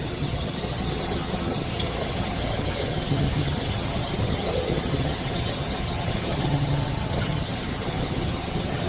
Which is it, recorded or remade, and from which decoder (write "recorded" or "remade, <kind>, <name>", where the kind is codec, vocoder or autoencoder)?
remade, vocoder, HiFi-GAN